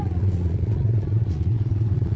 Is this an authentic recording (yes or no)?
no